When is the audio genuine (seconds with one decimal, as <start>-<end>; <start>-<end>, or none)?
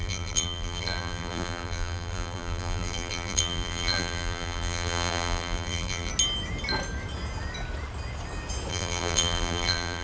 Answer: 6.1-8.7